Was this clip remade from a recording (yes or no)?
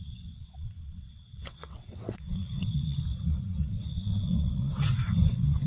yes